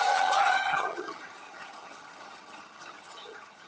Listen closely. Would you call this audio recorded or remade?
remade